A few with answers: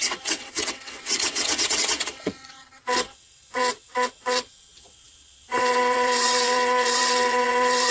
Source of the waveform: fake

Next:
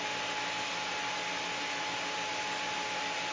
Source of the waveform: real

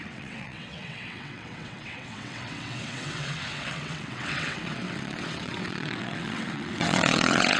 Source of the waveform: fake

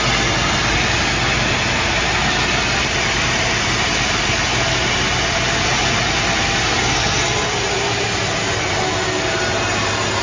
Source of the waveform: real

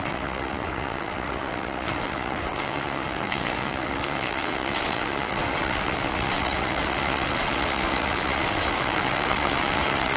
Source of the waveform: fake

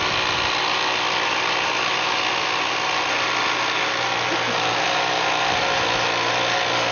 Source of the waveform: real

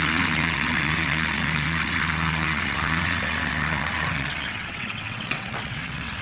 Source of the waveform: fake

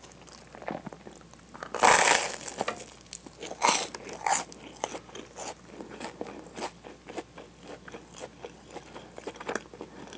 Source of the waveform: real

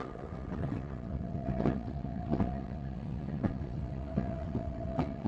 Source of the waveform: fake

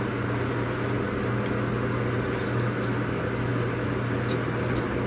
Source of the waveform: real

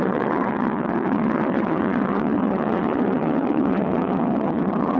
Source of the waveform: fake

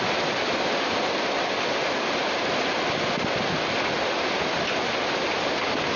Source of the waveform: real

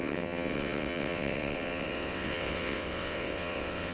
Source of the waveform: fake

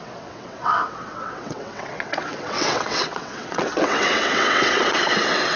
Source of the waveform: fake